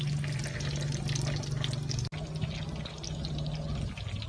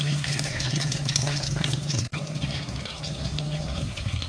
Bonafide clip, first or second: first